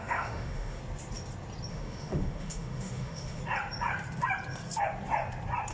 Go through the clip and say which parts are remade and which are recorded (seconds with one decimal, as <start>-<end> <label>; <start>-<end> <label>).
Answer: 0.0-0.8 remade; 0.8-1.7 recorded; 1.7-3.4 remade; 3.4-5.7 recorded